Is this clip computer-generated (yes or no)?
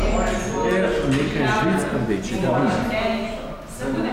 no